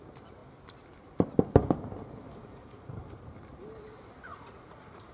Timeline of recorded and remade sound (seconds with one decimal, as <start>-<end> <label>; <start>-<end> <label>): 0.0-2.4 recorded; 2.4-2.9 remade; 2.9-4.3 recorded; 4.3-5.1 remade